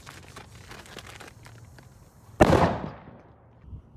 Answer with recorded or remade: recorded